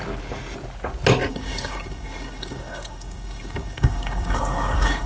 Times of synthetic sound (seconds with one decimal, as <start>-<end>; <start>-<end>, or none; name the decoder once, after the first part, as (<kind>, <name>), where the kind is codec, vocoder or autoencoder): 1.3-5.1 (codec, DAC)

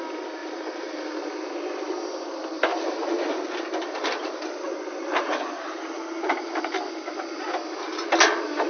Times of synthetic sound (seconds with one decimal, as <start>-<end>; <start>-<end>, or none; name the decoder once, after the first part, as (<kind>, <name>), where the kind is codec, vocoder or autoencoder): 0.4-1.5 (vocoder, BigVGAN v2); 2.7-6.6

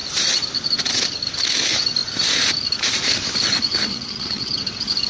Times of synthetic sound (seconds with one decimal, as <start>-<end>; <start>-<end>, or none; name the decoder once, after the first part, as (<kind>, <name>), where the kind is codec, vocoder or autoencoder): 3.9-4.5 (vocoder, WaveNeXt)

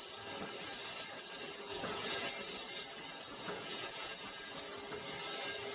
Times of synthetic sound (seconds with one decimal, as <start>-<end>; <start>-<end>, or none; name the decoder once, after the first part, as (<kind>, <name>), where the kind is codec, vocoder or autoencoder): 1.7-2.3 (vocoder, Vocos); 3.3-4.6

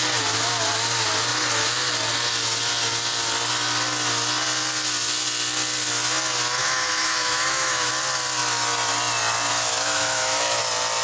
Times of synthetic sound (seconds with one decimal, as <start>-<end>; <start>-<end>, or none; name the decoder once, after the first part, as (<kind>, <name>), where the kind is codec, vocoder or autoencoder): 6.6-7.9 (autoencoder, DAC-VAE); 9.5-10.6

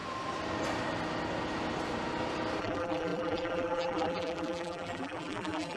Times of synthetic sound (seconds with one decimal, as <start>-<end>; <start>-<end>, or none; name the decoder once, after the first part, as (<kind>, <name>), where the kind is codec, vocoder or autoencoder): 2.6-5.8 (vocoder, BigVGAN v2)